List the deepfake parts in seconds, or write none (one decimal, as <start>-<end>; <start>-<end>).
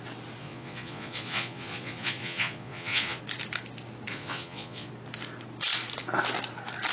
0.4-3.2; 4.1-4.9